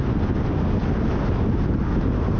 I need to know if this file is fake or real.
real